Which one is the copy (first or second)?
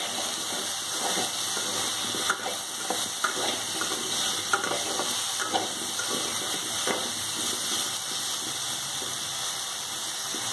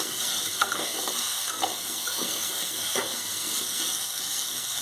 second